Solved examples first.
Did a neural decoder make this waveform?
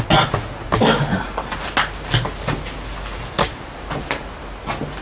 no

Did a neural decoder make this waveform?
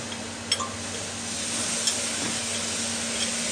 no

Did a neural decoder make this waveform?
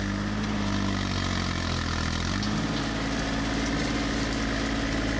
no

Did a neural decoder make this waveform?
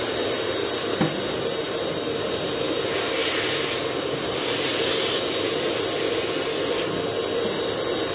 no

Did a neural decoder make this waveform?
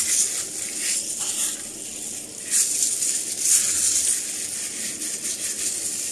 no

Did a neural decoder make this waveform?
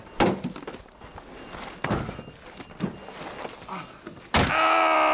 no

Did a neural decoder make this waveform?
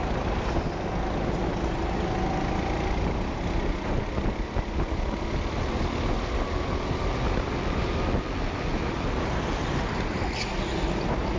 no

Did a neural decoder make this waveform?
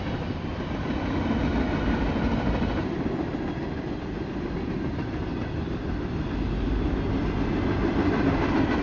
no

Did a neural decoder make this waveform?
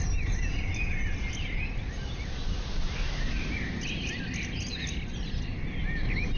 no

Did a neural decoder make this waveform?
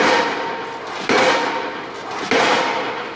no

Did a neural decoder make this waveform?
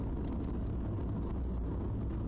no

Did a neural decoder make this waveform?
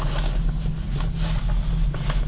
no